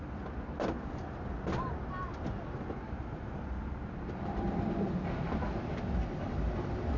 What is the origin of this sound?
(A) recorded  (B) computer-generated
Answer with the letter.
A